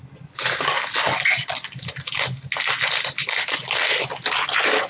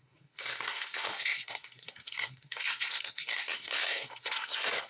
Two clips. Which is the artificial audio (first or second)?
second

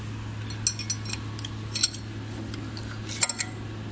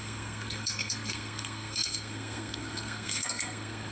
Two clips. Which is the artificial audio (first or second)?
second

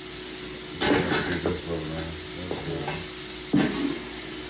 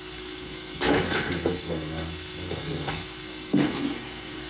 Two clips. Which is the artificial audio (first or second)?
second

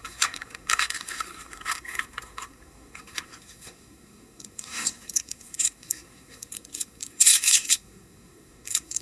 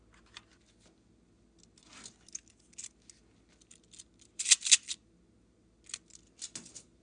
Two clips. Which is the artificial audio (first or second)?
first